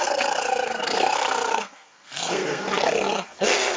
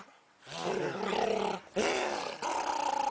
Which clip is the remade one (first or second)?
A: first